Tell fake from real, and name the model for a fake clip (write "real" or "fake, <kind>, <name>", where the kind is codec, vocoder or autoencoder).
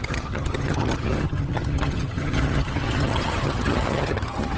fake, vocoder, HiFi-GAN